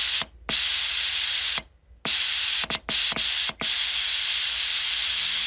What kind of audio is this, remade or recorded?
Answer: recorded